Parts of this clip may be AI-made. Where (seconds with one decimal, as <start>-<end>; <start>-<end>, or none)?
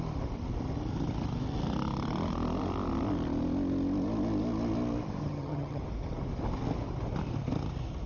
5.2-5.8